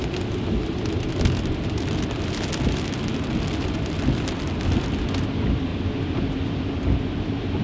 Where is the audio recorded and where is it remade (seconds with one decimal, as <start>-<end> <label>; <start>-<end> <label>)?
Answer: 0.0-7.6 recorded